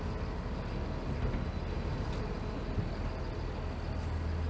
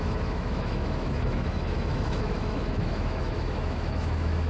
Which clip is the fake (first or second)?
second